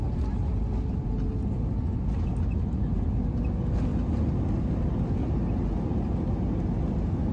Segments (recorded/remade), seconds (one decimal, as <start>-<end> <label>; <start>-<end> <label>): 0.0-7.3 recorded